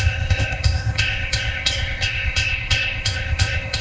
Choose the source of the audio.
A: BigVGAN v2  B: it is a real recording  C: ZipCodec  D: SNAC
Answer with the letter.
C